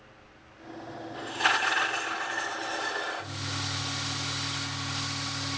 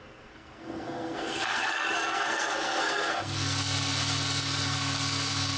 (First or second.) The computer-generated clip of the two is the second